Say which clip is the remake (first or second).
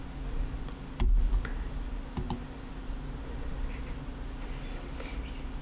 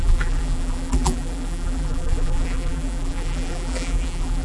second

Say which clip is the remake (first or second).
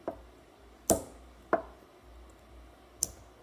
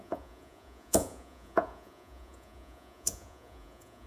second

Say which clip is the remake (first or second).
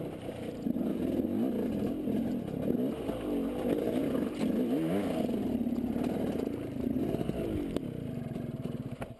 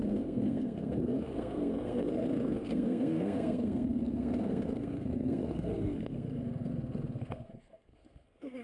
second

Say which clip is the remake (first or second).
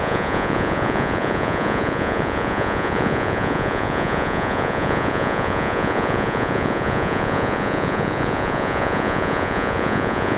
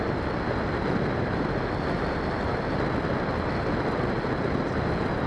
first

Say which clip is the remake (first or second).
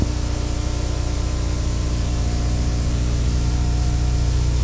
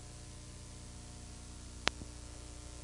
first